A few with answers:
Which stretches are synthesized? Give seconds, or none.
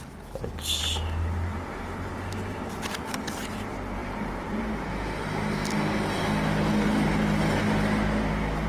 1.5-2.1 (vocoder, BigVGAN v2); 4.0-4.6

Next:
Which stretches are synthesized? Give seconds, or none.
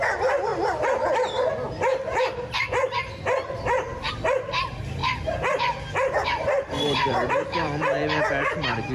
0.5-1.5 (vocoder, BigVGAN v2); 5.0-8.9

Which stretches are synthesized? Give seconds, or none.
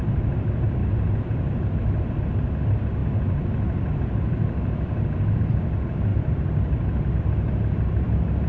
0.8-2.1 (vocoder, BigVGAN v2)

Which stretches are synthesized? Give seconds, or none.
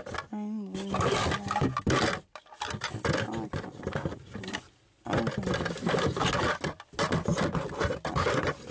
none